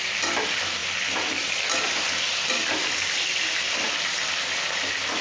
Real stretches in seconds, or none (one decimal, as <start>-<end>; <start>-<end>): 0.0-5.2